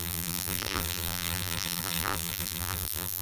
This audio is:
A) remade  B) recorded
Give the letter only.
A